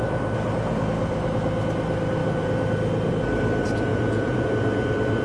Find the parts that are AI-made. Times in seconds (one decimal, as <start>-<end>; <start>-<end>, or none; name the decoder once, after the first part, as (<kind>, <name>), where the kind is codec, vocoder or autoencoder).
3.9-4.5 (vocoder, Vocos)